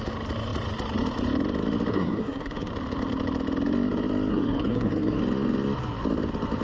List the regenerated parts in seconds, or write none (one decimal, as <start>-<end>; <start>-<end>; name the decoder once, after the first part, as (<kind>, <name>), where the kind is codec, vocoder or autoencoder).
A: 1.9-2.7 (codec, SNAC); 4.3-5.2